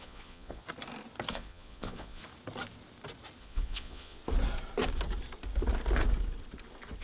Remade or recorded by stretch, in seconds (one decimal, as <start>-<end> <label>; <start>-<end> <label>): 0.0-0.6 remade; 0.6-1.3 recorded; 1.3-2.2 remade; 2.2-3.4 recorded; 3.4-4.2 remade; 4.2-7.0 recorded